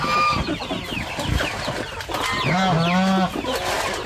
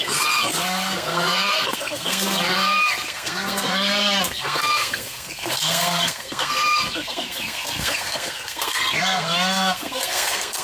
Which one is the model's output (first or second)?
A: second